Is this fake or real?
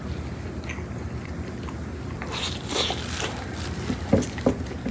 real